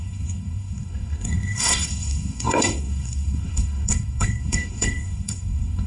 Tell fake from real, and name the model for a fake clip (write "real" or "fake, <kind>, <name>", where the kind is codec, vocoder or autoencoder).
fake, codec, SNAC